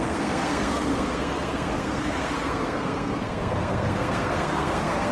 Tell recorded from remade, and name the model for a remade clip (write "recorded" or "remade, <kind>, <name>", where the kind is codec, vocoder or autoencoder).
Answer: remade, codec, SNAC